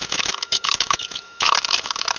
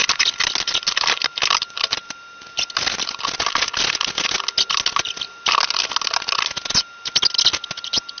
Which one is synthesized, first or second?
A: first